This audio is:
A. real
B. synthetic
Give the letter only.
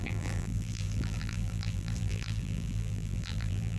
B